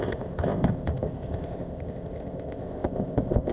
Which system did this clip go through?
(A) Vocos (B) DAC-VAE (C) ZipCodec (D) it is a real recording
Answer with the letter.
C